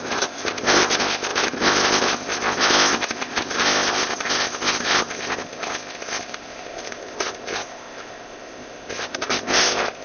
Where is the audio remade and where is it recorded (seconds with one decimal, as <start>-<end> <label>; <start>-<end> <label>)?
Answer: 0.0-10.0 remade